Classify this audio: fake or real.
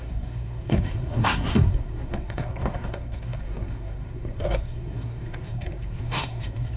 fake